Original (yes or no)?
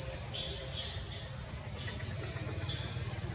yes